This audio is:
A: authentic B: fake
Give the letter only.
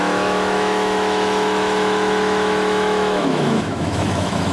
B